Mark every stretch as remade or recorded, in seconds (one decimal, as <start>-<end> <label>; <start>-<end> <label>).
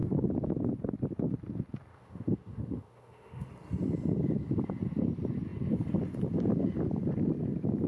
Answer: 0.0-1.9 recorded; 1.9-3.5 remade; 3.5-7.9 recorded